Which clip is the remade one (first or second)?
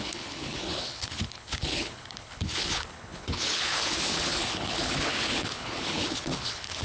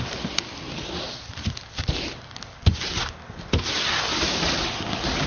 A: first